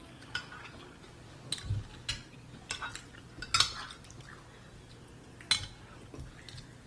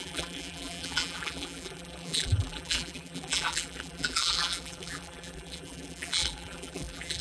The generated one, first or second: second